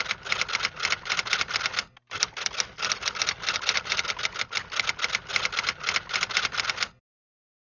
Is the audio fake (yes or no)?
no